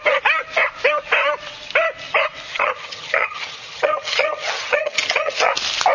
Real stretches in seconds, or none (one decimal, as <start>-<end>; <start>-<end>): 0.0-2.5; 5.5-5.9

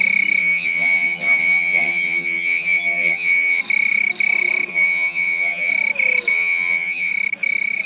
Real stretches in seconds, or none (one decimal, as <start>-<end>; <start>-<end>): 0.0-0.4; 3.6-4.7; 5.7-6.3; 7.1-7.9

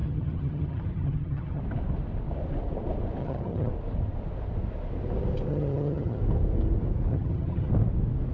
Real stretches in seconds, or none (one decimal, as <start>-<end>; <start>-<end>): 1.6-3.2; 3.7-5.5; 6.2-7.1; 7.7-8.3

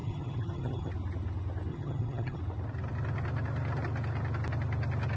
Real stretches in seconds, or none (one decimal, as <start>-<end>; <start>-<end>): 0.9-1.7; 2.4-5.2

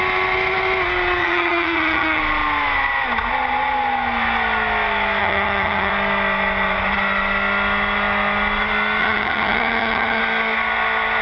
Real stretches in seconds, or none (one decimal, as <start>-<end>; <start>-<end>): 0.0-1.2; 2.2-5.2; 5.9-9.0; 10.2-11.2

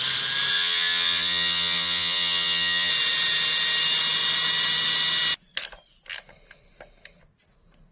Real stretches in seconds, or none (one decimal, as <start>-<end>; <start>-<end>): 0.0-0.5; 2.9-7.9